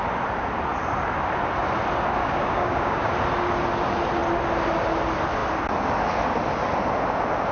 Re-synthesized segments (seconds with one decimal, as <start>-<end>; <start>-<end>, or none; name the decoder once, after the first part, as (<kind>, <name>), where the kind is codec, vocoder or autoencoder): 2.2-3.1 (codec, DAC)